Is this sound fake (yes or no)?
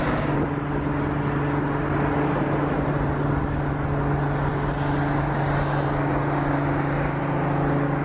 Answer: no